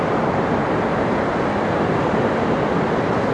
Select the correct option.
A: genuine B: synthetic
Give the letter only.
A